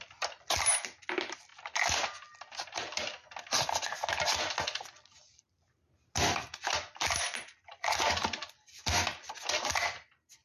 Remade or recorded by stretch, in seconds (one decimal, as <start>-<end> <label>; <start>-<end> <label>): 0.0-10.4 recorded